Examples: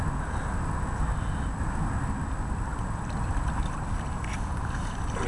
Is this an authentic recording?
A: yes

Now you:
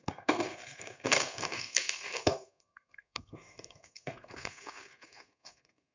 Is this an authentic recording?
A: no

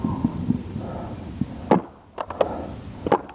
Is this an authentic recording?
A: yes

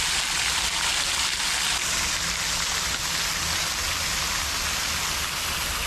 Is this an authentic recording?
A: yes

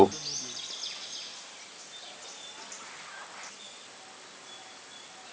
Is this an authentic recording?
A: yes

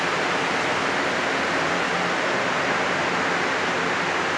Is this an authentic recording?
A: yes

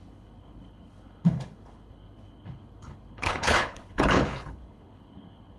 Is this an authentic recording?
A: no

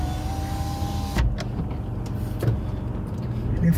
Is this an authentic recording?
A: yes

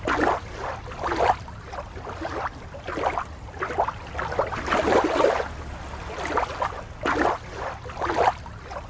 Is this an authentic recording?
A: yes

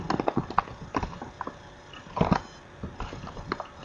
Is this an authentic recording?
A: yes